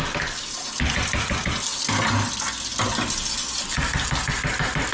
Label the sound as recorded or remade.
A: recorded